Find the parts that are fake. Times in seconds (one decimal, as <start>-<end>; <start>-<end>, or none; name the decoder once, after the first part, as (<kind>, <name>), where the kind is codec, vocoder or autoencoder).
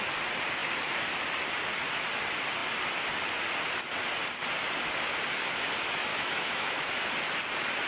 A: 6.1-6.9 (autoencoder, DAC-VAE)